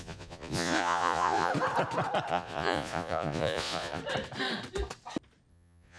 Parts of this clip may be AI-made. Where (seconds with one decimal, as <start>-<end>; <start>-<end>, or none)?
0.0-1.5; 2.3-4.0; 5.5-6.0